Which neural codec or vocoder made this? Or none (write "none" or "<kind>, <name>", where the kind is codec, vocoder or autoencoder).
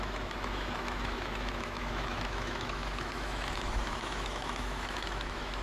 autoencoder, DAC-VAE